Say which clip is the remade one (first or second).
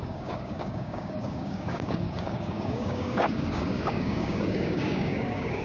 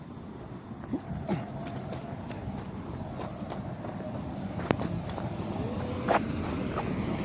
first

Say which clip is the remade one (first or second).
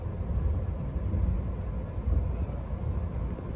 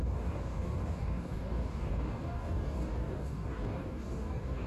second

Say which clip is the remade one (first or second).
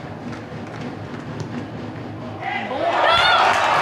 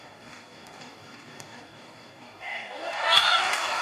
second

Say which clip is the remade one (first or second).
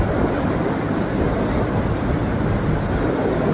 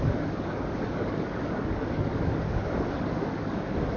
second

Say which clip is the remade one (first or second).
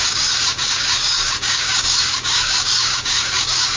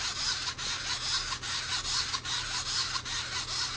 first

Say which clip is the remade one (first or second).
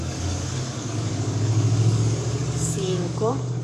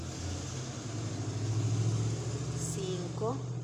first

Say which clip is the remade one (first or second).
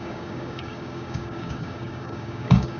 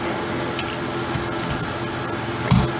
first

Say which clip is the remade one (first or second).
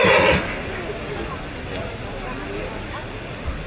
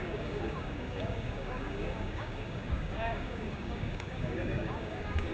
second